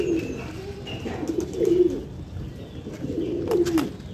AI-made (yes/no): no